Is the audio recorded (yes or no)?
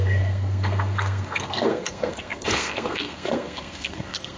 no